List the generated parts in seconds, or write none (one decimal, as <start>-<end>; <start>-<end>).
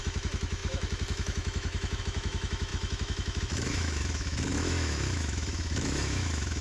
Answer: 0.0-6.6